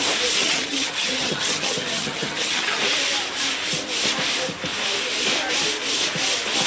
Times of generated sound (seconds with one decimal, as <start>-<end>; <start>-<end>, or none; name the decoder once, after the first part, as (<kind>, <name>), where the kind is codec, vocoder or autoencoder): 0.4-2.8 (vocoder, HiFi-GAN)